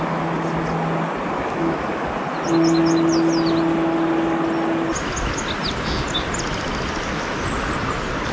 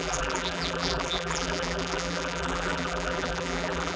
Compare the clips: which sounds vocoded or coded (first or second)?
second